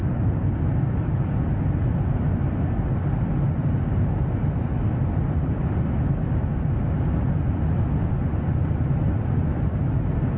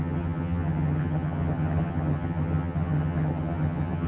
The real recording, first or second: first